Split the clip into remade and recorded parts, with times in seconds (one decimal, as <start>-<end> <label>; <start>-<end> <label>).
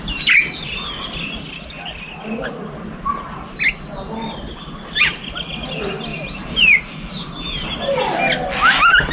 0.0-6.1 recorded; 6.1-6.8 remade; 6.8-9.1 recorded